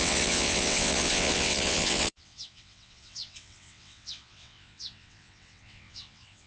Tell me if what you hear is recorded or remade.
remade